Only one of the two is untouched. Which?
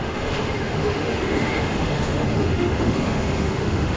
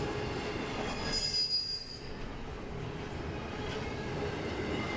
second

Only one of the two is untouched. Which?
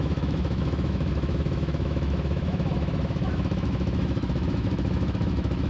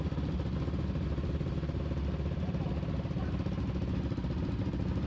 second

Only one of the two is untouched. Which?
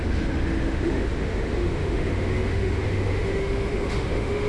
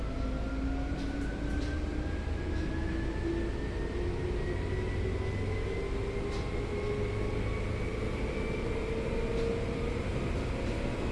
second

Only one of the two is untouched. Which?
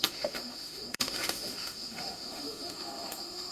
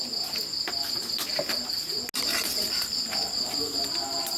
second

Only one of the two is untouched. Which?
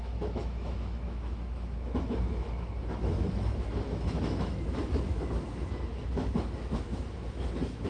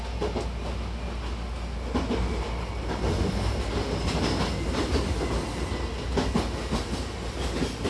second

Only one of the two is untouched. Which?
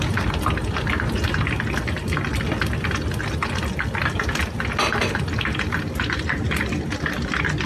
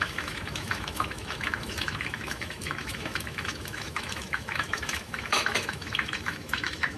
first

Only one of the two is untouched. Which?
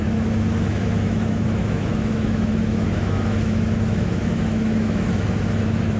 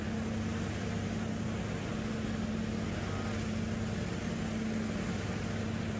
second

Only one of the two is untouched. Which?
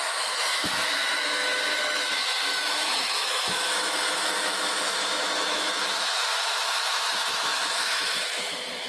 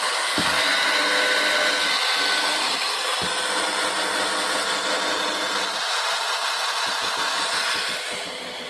second